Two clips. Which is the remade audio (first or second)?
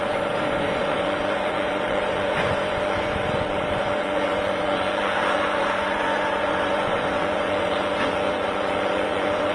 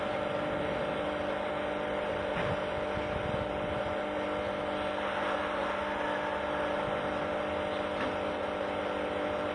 first